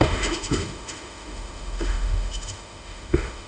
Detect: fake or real fake